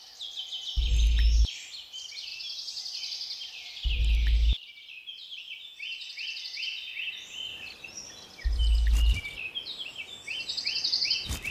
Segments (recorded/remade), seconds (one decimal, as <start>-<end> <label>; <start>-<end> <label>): 0.0-11.5 recorded